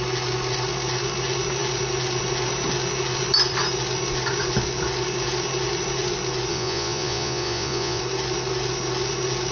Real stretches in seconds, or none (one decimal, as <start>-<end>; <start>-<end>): 0.0-6.5; 8.0-9.5